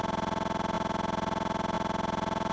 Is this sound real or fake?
fake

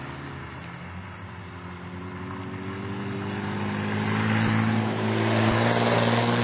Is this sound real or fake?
real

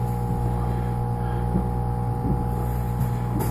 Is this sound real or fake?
real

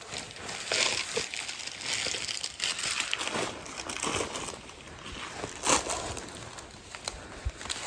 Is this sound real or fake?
real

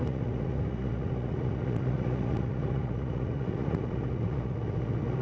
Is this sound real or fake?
fake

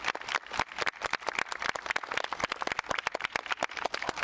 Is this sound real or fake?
real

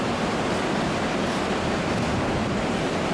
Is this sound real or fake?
real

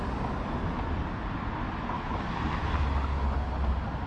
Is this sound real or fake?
real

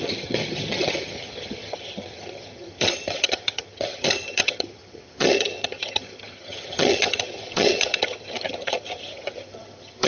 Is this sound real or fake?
fake